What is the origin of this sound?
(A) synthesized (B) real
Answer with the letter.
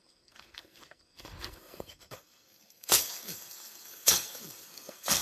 A